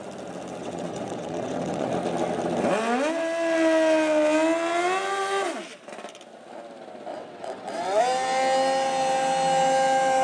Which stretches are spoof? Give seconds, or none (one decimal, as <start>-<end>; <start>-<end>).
0.6-1.9; 7.1-8.0

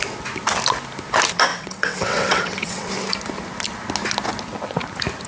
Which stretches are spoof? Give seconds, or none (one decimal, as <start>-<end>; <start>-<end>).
1.5-2.9